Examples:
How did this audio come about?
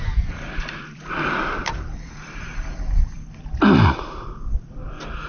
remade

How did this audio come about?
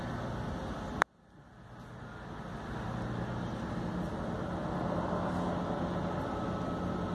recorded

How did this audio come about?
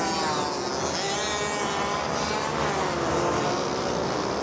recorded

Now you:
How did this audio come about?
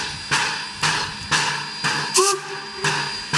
recorded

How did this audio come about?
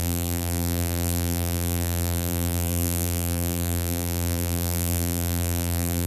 remade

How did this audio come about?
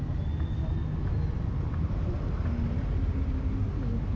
recorded